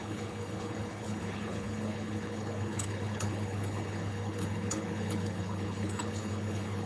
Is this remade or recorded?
remade